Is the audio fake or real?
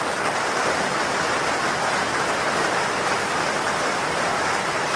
real